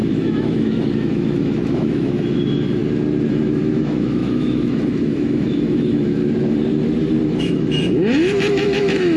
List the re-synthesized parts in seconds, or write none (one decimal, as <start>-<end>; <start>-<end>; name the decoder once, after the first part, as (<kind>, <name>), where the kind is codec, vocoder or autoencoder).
0.0-2.8 (autoencoder, DAC-VAE); 3.3-6.2; 7.4-9.2